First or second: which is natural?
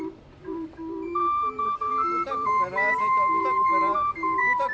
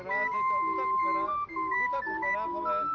second